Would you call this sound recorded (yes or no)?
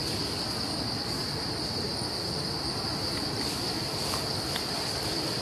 yes